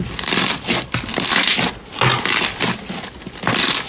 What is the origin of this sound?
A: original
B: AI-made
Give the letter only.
A